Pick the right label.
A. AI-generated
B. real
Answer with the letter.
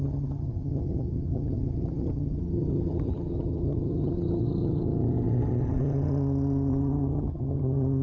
A